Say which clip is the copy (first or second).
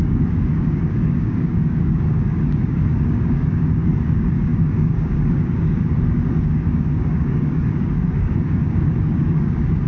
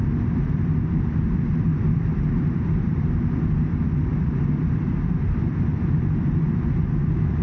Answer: first